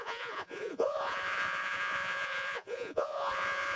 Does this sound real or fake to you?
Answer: fake